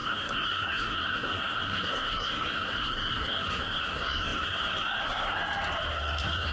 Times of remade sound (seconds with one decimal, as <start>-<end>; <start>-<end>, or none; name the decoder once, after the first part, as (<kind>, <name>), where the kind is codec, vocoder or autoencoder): 0.0-5.4 (codec, SNAC); 5.9-6.5